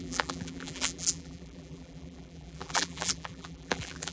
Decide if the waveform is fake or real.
fake